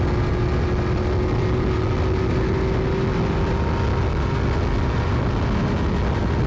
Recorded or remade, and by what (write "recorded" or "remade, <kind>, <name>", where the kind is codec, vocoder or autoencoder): recorded